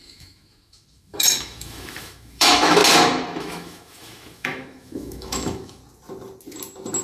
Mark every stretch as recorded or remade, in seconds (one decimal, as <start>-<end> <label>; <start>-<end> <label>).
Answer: 0.0-2.8 remade; 2.8-3.4 recorded; 3.4-5.8 remade; 5.8-7.0 recorded